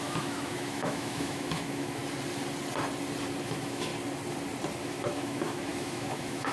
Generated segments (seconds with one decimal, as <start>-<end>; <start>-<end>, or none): 0.0-2.0; 3.4-3.9; 4.8-6.5